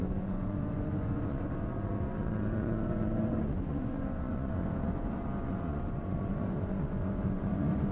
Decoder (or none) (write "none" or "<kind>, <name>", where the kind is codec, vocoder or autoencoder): vocoder, Vocos